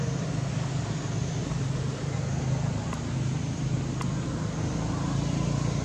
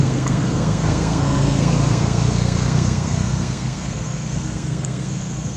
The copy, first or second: second